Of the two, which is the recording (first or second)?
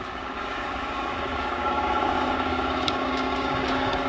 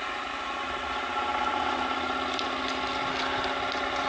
second